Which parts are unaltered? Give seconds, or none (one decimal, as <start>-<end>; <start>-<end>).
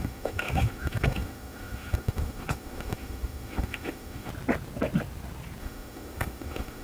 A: 4.3-5.6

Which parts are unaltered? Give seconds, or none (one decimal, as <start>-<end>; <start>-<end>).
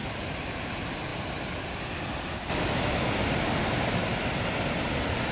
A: 0.0-5.3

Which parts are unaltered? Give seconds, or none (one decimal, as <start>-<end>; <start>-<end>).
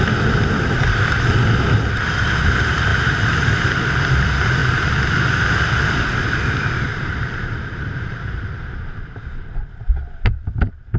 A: 0.0-2.9; 3.8-6.9; 9.7-11.0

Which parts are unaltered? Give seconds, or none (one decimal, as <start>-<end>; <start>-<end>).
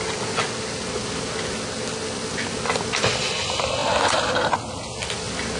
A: 0.0-5.6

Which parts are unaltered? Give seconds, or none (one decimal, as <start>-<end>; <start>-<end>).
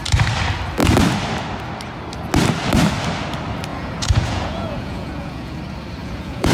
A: 0.0-3.7; 5.6-6.0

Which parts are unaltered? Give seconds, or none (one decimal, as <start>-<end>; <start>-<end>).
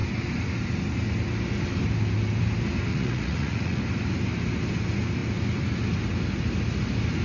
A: 0.0-2.9; 3.8-7.2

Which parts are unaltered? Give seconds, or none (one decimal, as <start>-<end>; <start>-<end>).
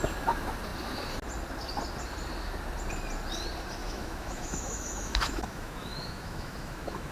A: 0.0-3.8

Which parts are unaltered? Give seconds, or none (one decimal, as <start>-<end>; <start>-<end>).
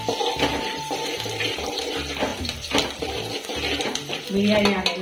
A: 0.0-0.5; 1.9-2.3; 3.1-5.0